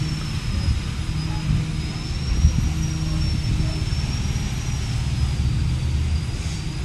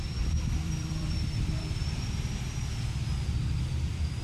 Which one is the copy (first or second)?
second